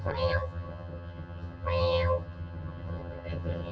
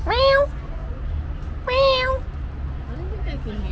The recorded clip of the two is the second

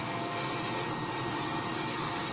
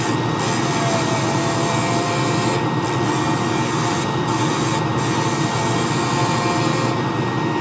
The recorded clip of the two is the second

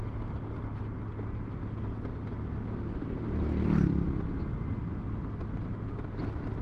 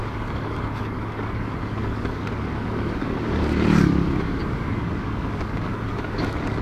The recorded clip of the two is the first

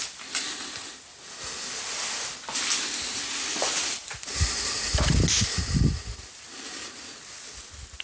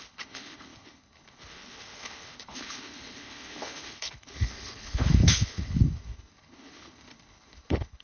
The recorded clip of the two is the first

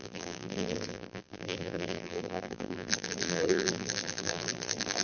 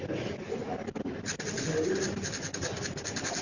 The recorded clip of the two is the second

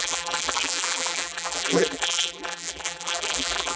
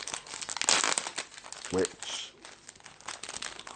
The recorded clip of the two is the second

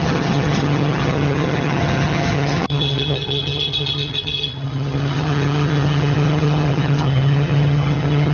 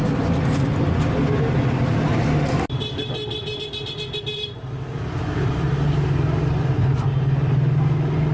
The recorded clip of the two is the second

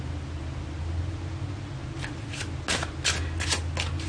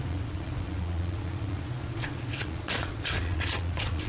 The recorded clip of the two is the first